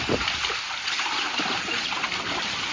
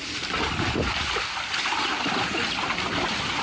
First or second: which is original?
second